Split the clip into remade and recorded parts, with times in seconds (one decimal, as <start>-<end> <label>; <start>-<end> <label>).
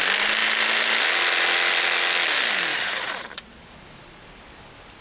0.0-2.7 recorded; 2.7-4.4 remade; 4.4-5.0 recorded